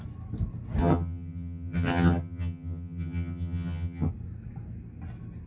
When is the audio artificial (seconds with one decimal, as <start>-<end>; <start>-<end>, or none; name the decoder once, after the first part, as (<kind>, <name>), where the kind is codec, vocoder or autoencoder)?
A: 0.8-4.1 (vocoder, HiFi-GAN)